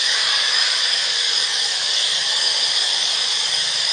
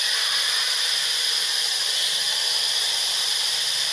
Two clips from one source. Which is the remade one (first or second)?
first